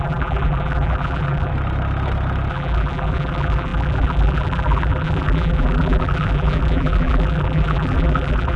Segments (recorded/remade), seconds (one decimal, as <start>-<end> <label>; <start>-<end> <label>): 0.0-1.5 remade; 1.5-2.5 recorded; 2.5-8.6 remade